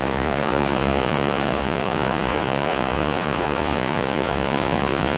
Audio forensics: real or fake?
fake